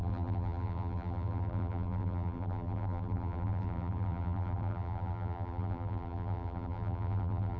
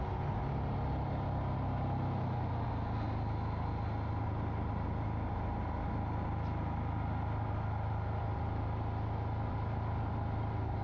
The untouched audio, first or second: second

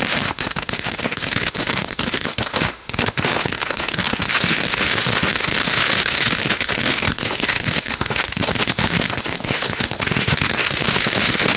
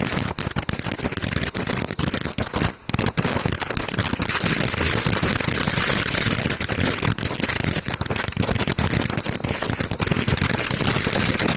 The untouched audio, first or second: second